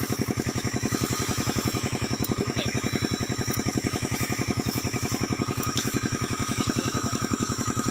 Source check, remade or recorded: remade